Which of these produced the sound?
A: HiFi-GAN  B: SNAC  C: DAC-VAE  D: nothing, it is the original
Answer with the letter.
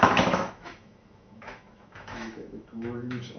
C